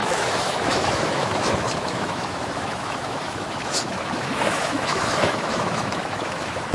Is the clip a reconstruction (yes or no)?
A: yes